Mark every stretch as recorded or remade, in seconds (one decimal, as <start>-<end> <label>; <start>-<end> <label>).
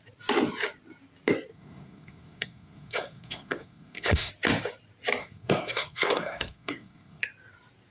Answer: 0.0-1.5 recorded; 1.5-4.3 remade; 4.3-5.2 recorded; 5.2-7.2 remade; 7.2-7.9 recorded